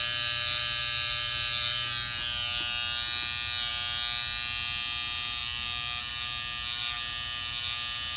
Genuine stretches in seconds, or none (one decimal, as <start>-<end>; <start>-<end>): 0.0-8.2